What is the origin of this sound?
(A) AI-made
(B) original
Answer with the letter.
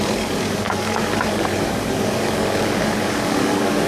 A